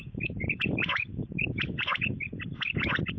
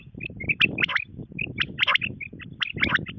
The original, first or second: second